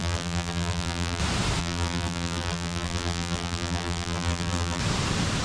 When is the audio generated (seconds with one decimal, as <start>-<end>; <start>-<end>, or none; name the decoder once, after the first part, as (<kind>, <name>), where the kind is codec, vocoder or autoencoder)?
0.0-1.2 (vocoder, BigVGAN v2); 1.6-4.8